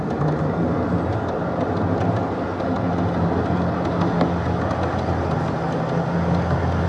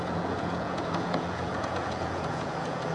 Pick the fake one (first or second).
second